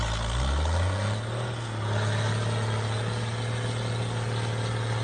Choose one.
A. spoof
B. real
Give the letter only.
B